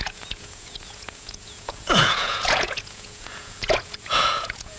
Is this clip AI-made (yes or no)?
yes